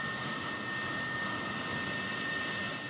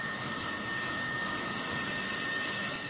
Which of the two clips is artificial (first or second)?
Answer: second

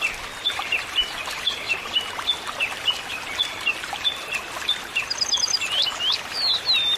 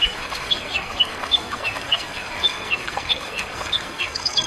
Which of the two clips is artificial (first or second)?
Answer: second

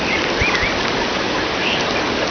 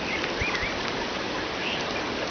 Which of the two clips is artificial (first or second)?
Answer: second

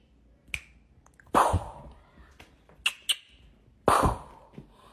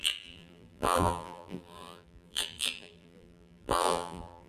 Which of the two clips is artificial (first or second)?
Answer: second